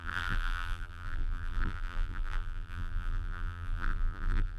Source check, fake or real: fake